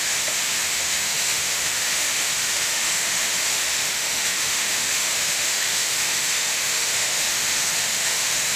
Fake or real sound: fake